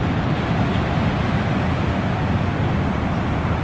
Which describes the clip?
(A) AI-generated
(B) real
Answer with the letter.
B